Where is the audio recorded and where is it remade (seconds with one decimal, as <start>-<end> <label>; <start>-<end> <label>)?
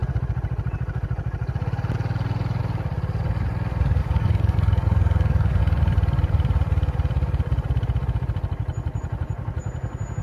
0.0-4.0 recorded; 4.0-5.6 remade; 5.6-10.2 recorded